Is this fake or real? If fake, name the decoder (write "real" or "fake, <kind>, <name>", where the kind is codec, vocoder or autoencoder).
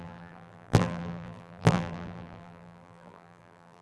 fake, vocoder, BigVGAN v2